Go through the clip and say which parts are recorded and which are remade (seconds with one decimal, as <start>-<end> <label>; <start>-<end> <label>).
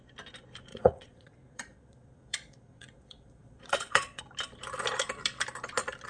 0.0-0.7 recorded; 0.7-4.2 remade; 4.2-6.1 recorded